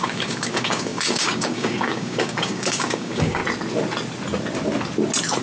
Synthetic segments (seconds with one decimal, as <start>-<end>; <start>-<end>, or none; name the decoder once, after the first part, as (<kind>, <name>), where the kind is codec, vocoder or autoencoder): 0.0-3.4 (codec, DAC)